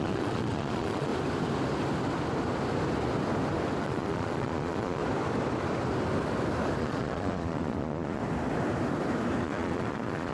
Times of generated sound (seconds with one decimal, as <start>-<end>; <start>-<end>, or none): 0.0-1.1; 3.8-5.0; 6.8-8.2; 9.4-10.3